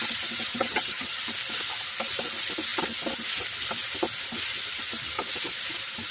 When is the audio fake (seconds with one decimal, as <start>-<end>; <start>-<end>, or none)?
0.5-1.2